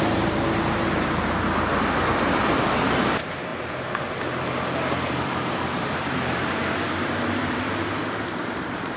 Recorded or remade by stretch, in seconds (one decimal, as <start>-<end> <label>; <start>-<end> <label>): 0.0-1.7 remade; 1.7-2.4 recorded; 2.4-3.5 remade; 3.5-5.1 recorded; 5.1-9.0 remade